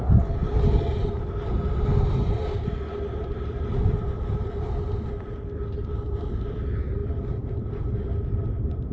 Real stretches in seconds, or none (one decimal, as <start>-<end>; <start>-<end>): 0.0-8.9